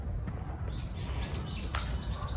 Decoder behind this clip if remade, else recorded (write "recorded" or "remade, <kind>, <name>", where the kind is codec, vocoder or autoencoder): recorded